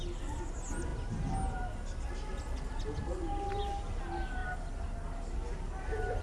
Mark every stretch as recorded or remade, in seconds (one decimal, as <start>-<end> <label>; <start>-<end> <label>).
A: 0.0-6.2 recorded